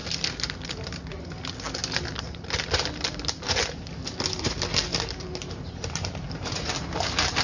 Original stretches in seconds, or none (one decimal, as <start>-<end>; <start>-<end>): 0.0-4.9